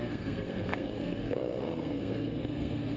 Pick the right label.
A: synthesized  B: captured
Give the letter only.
A